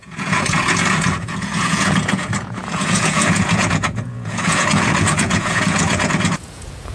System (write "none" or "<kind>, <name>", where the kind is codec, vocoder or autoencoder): vocoder, Vocos